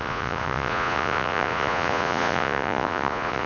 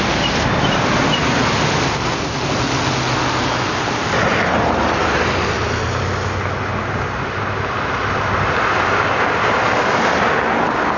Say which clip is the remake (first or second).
first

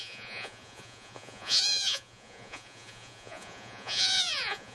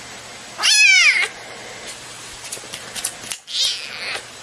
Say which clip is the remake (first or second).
first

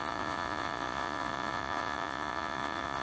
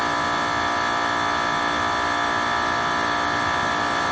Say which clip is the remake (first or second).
first